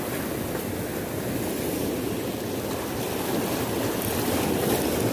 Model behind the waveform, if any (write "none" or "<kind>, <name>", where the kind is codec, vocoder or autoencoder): none